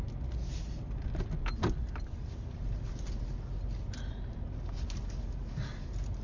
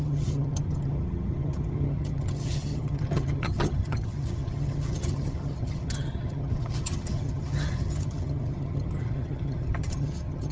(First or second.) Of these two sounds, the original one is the first